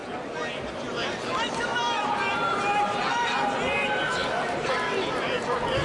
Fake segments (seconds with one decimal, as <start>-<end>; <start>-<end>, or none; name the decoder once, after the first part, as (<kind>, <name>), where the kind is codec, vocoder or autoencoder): none